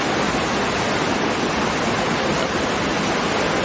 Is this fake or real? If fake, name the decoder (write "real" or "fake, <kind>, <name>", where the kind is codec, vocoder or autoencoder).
real